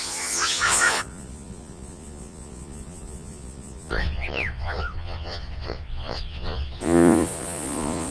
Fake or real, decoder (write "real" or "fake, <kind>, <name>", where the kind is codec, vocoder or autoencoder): fake, vocoder, Vocos